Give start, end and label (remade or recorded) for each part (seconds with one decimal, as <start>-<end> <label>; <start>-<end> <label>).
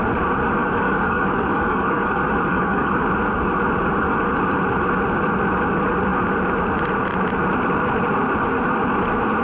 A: 0.0-0.6 recorded; 0.6-2.1 remade; 2.1-2.5 recorded; 2.5-3.0 remade; 3.0-9.4 recorded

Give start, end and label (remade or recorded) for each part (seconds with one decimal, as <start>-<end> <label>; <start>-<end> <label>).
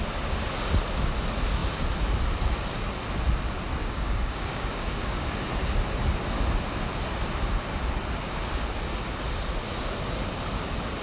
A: 0.0-3.8 recorded; 3.8-5.4 remade; 5.4-11.0 recorded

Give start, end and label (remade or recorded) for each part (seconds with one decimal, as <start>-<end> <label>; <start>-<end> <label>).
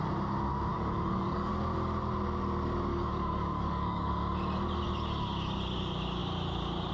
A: 0.0-0.7 recorded; 0.7-1.5 remade; 1.5-2.9 recorded; 2.9-4.1 remade; 4.1-6.9 recorded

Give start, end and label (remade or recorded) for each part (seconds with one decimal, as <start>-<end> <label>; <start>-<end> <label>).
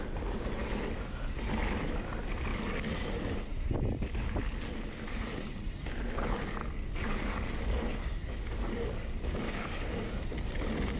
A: 0.0-0.6 recorded; 0.6-1.4 remade; 1.4-2.5 recorded; 2.5-3.1 remade; 3.1-6.6 recorded; 6.6-10.2 remade; 10.2-11.0 recorded